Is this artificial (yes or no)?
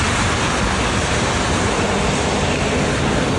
no